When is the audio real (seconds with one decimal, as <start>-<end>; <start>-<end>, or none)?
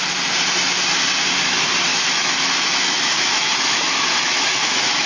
0.0-1.9